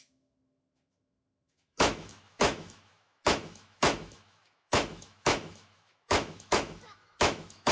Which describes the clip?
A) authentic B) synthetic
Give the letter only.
B